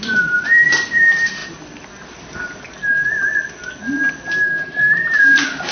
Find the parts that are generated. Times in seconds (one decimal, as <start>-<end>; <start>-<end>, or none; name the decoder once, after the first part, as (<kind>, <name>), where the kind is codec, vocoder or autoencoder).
0.0-1.4 (vocoder, BigVGAN v2); 4.8-5.7